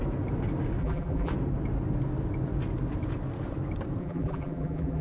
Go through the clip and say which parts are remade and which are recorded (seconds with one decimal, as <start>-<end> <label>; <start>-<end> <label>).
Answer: 0.0-0.8 recorded; 0.8-1.3 remade; 1.3-4.0 recorded; 4.0-5.0 remade